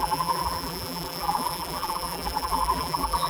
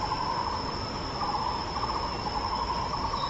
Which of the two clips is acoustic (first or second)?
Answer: second